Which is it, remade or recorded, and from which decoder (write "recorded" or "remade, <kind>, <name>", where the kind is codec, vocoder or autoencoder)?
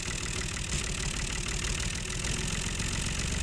recorded